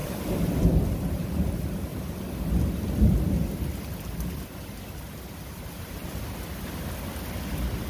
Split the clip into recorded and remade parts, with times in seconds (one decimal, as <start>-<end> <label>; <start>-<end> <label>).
0.0-1.3 remade; 1.3-1.9 recorded; 1.9-2.5 remade; 2.5-7.9 recorded